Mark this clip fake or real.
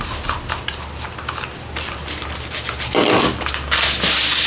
real